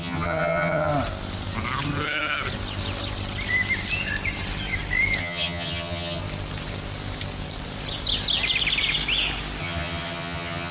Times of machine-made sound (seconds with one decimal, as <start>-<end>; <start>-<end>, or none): 0.0-0.9; 5.2-6.2; 9.6-10.7